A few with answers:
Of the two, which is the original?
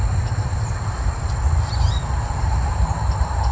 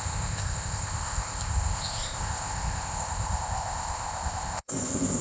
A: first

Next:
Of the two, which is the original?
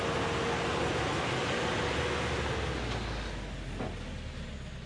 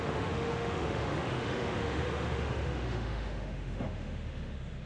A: first